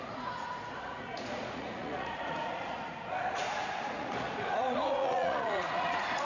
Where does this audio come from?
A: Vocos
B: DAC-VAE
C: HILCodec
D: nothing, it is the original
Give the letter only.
A